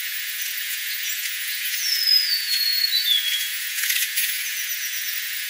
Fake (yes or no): yes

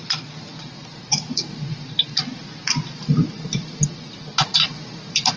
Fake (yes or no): no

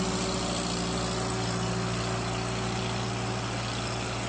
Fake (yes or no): no